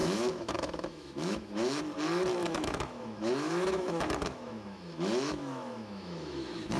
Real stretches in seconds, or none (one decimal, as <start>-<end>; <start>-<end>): 1.8-2.4